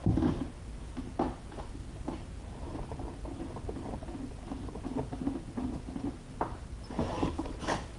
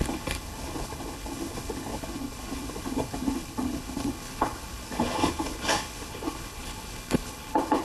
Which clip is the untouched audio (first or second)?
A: first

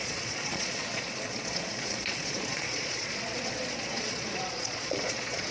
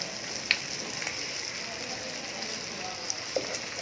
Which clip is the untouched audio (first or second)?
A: second